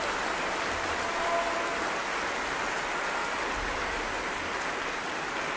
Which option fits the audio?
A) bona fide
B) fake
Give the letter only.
A